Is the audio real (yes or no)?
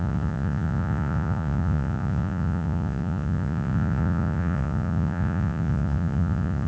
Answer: no